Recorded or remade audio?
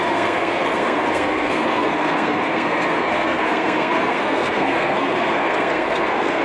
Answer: remade